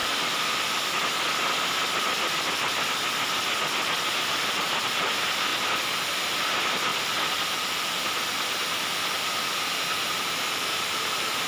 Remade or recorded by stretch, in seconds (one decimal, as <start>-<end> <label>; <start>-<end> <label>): 0.0-4.5 recorded; 4.5-5.5 remade; 5.5-6.1 recorded; 6.1-6.9 remade; 6.9-10.2 recorded; 10.2-11.5 remade